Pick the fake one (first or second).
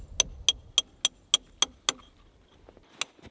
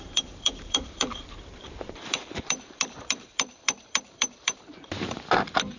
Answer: second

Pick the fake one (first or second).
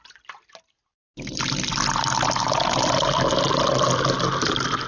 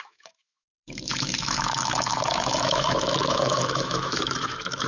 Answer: second